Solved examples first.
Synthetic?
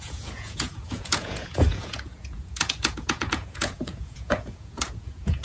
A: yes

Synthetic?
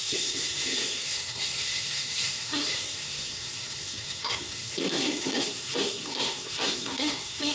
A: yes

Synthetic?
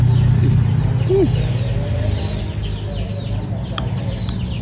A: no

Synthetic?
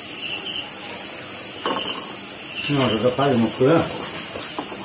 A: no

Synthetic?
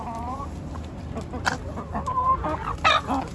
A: no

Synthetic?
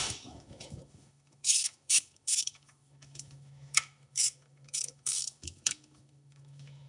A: yes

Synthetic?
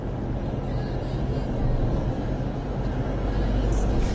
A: no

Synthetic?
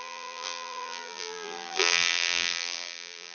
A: yes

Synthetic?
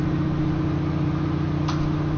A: no